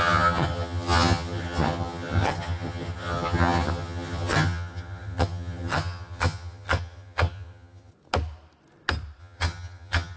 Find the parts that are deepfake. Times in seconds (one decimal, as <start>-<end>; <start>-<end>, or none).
0.0-7.9; 9.2-10.2